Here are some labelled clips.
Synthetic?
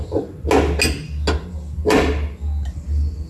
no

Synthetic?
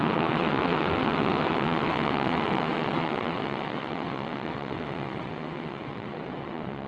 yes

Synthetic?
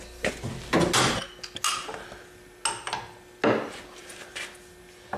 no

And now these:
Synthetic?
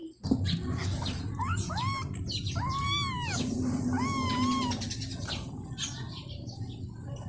no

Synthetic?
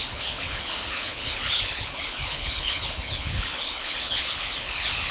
yes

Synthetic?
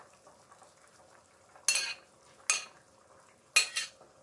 no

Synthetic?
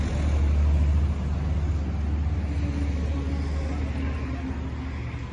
no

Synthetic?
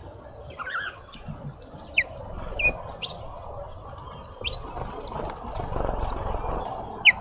no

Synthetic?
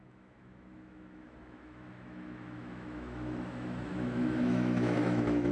yes